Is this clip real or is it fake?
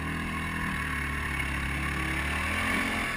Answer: real